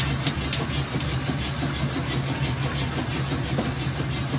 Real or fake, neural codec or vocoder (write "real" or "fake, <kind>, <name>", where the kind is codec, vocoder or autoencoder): real